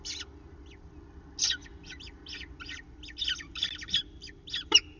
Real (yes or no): yes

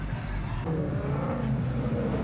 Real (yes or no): yes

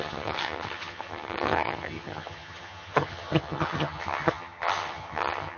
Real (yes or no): no